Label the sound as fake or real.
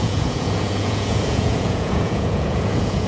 fake